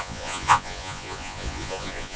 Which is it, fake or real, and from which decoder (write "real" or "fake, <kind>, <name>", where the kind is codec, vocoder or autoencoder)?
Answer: fake, vocoder, Vocos